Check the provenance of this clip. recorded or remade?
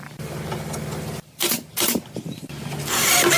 recorded